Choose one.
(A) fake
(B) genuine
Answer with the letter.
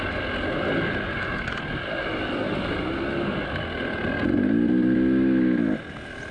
B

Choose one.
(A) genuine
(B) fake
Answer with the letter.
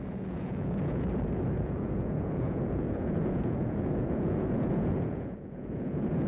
B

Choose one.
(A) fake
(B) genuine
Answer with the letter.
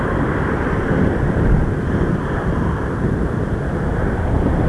A